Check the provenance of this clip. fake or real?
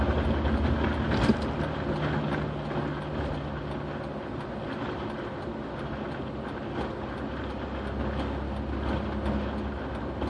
real